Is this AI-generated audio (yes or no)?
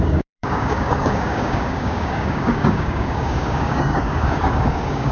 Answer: yes